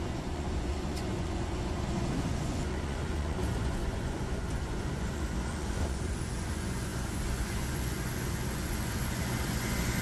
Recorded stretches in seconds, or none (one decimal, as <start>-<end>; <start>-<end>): none